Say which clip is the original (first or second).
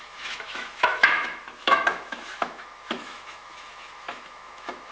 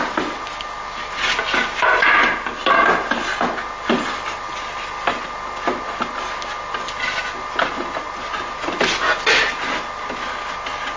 second